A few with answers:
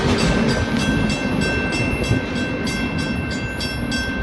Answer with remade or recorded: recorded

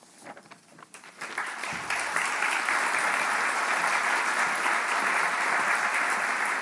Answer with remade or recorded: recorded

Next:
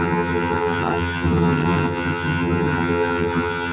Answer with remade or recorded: remade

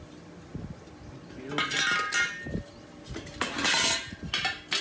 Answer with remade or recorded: recorded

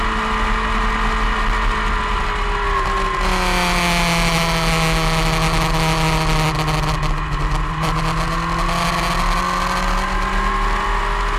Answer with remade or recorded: recorded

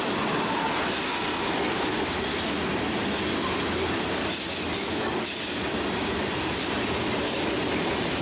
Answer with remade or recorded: recorded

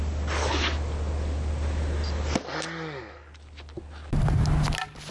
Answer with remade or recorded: recorded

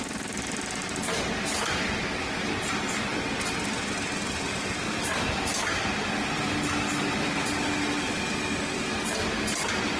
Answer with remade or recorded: recorded